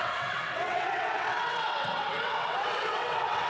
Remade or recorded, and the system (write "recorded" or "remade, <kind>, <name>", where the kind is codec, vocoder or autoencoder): remade, vocoder, WaveNeXt